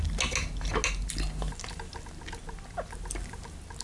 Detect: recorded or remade recorded